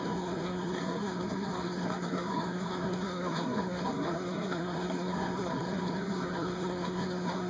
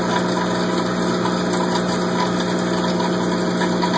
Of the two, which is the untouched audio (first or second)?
second